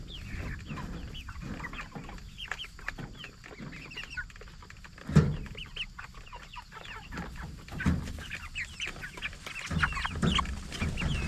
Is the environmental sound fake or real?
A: real